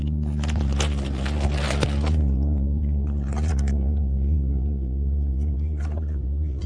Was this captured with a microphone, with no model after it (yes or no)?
no